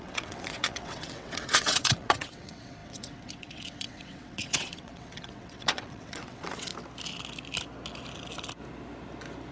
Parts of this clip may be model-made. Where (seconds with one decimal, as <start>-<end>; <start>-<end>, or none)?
0.0-6.7

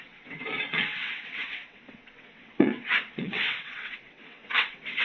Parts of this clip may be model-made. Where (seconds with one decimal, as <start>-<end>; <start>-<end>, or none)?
0.0-5.0

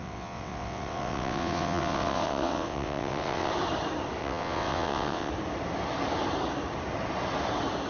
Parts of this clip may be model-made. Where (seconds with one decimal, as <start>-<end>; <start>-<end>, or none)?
0.0-3.5; 4.2-5.3

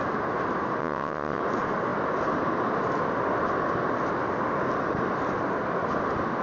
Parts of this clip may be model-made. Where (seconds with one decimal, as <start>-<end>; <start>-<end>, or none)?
0.8-1.4

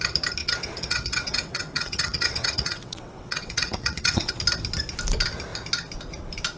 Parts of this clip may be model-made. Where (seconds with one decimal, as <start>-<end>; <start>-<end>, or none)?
0.4-4.3

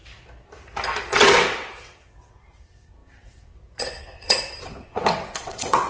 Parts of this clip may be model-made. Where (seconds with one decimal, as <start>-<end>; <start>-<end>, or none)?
1.1-5.9

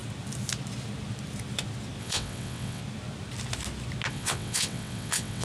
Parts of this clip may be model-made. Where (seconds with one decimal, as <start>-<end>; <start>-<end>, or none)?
2.0-2.8; 4.1-5.4

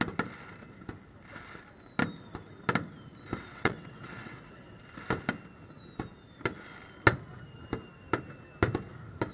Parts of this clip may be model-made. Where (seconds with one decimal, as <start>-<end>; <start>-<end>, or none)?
3.5-4.8